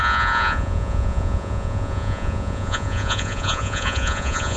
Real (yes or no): no